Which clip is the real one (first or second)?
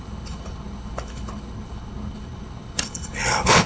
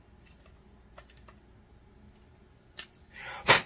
second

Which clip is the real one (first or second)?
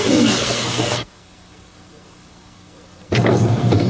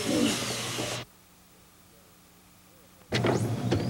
second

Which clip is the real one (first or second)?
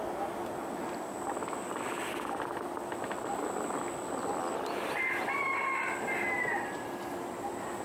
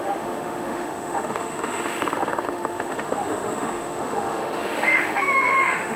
first